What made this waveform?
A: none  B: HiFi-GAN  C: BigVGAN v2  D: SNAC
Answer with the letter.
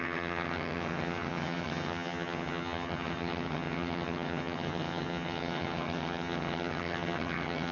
B